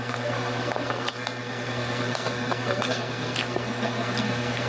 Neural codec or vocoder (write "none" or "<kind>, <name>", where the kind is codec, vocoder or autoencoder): codec, SNAC